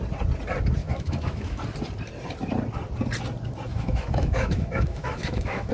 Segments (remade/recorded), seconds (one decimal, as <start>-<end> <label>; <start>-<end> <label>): 0.0-0.8 recorded; 0.8-1.6 remade; 1.6-3.7 recorded; 3.7-5.7 remade